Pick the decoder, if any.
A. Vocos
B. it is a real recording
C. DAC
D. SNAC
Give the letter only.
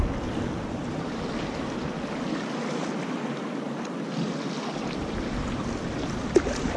B